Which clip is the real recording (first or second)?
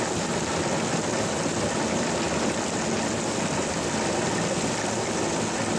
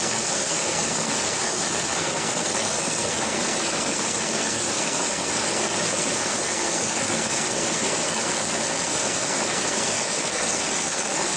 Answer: first